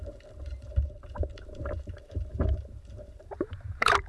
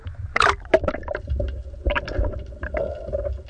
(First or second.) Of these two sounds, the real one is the second